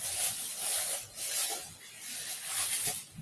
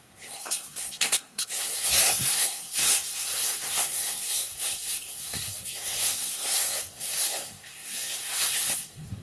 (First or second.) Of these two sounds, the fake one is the second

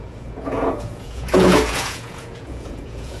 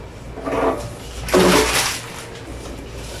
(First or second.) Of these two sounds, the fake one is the first